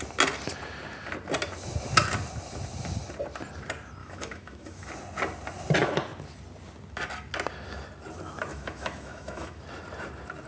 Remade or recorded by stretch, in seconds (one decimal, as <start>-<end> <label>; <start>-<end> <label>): 0.0-4.0 recorded; 4.0-4.9 remade; 4.9-8.5 recorded; 8.5-9.6 remade; 9.6-10.5 recorded